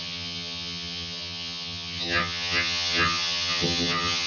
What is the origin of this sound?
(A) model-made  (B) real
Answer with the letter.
A